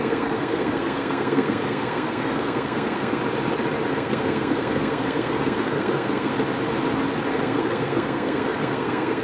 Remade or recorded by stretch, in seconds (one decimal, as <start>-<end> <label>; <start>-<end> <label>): 0.0-3.2 remade; 3.2-3.9 recorded; 3.9-6.3 remade; 6.3-7.3 recorded; 7.3-9.2 remade

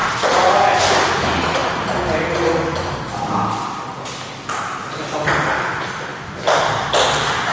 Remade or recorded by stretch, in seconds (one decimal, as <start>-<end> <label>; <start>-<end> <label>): 0.0-0.8 remade; 0.8-7.5 recorded

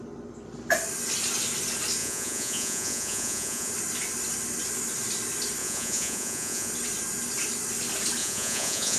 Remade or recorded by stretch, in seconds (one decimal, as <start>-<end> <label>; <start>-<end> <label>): 0.0-2.0 recorded; 2.0-3.7 remade; 3.7-5.6 recorded; 5.6-6.7 remade; 6.7-8.2 recorded; 8.2-9.0 remade

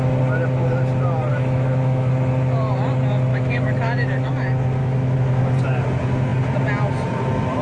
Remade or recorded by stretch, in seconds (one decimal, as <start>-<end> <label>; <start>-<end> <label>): 0.0-1.3 recorded; 1.3-2.1 remade; 2.1-3.3 recorded; 3.3-4.3 remade; 4.3-4.8 recorded; 4.8-5.4 remade; 5.4-7.6 recorded

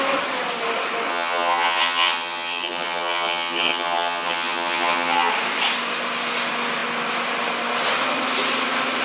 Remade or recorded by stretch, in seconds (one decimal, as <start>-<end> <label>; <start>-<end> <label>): 0.0-1.1 recorded; 1.1-5.3 remade; 5.3-9.0 recorded

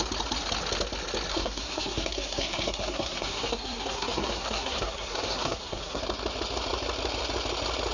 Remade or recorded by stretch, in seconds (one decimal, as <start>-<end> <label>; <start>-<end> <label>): 0.0-1.3 recorded; 1.3-6.0 remade; 6.0-7.9 recorded

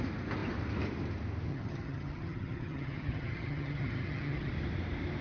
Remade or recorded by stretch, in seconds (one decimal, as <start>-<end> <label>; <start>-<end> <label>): 0.0-1.5 recorded; 1.5-4.5 remade; 4.5-5.2 recorded